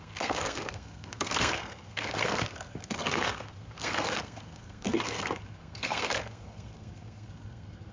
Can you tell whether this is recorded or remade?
remade